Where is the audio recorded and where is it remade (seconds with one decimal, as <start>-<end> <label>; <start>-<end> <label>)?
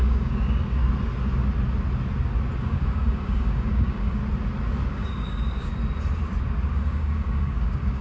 0.0-0.8 remade; 0.8-2.6 recorded; 2.6-4.2 remade; 4.2-4.9 recorded; 4.9-5.7 remade; 5.7-6.8 recorded; 6.8-8.0 remade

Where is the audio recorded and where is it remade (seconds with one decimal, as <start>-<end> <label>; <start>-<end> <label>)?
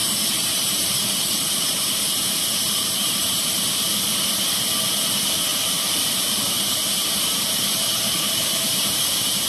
0.0-3.9 remade; 3.9-5.5 recorded; 5.5-9.5 remade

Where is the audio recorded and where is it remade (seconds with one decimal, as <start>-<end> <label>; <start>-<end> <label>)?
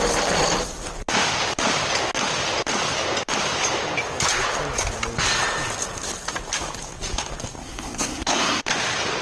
0.0-7.6 recorded; 7.6-8.6 remade; 8.6-9.2 recorded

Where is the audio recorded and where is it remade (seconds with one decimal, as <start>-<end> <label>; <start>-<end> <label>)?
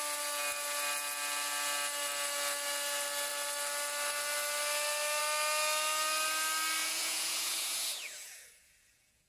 0.0-6.8 recorded; 6.8-9.3 remade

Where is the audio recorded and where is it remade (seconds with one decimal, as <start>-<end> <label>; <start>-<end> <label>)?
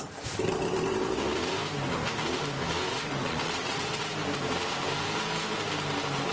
0.0-2.9 recorded; 2.9-4.0 remade; 4.0-6.3 recorded